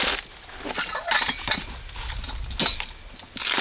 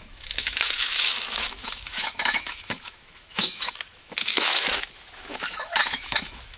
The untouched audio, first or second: first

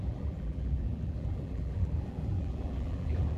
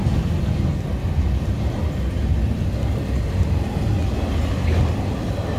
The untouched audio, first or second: second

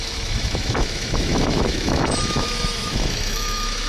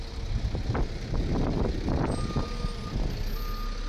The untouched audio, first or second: second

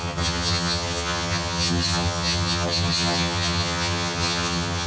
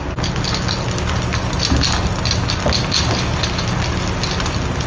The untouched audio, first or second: second